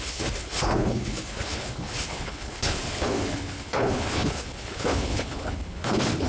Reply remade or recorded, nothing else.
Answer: remade